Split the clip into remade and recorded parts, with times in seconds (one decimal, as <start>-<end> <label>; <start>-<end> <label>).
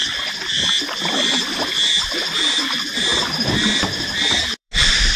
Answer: 0.0-2.1 recorded; 2.1-3.1 remade; 3.1-4.2 recorded; 4.2-5.2 remade